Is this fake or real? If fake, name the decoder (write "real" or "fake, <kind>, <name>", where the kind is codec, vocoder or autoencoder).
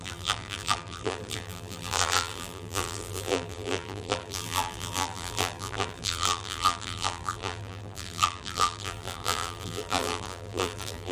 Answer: fake, vocoder, BigVGAN v2